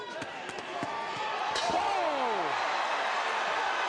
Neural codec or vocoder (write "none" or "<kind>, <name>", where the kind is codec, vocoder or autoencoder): none